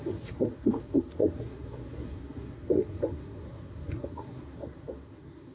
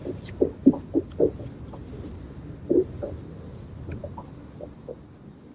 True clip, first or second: second